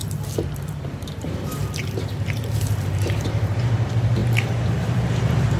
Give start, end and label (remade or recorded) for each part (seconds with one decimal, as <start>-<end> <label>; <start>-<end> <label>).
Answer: 0.0-5.6 remade